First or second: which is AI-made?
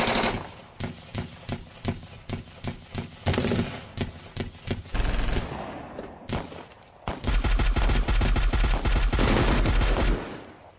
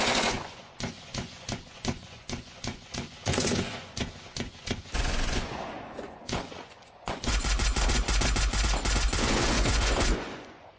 second